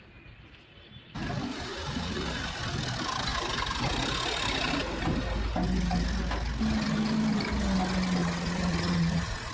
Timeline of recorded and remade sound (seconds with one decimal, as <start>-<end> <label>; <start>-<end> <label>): 0.0-1.5 recorded; 1.5-2.6 remade; 2.6-8.2 recorded; 8.2-9.5 remade

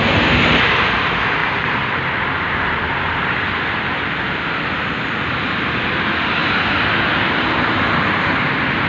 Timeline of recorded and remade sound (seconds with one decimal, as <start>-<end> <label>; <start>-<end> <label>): 0.0-1.4 recorded; 1.4-3.5 remade; 3.5-8.9 recorded

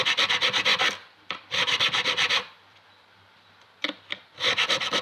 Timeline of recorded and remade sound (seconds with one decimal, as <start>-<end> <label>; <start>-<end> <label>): 0.0-0.7 recorded; 0.7-3.7 remade; 3.7-5.0 recorded

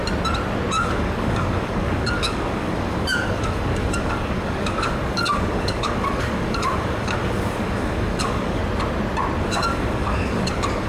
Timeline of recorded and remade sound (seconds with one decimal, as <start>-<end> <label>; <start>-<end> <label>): 0.0-0.7 recorded; 0.7-8.6 remade; 8.6-9.4 recorded; 9.4-10.9 remade

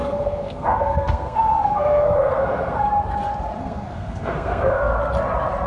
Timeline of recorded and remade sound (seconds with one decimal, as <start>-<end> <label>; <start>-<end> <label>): 0.0-2.9 remade; 2.9-3.6 recorded; 3.6-4.9 remade; 4.9-5.7 recorded

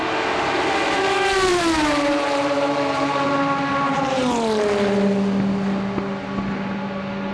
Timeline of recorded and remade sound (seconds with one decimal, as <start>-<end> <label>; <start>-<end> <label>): 0.0-1.5 recorded; 1.5-4.2 remade; 4.2-7.3 recorded